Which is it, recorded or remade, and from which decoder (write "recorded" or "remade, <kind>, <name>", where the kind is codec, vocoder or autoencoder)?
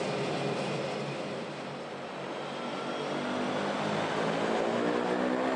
recorded